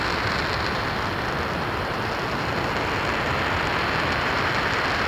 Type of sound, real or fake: real